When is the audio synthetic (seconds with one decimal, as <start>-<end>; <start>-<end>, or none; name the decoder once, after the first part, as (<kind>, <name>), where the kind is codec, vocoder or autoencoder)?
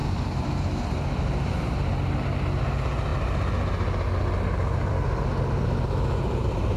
none